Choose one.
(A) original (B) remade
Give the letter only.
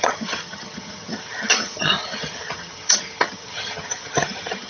B